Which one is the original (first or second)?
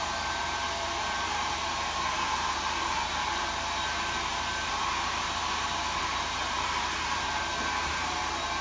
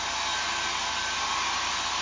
second